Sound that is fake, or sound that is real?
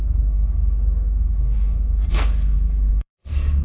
fake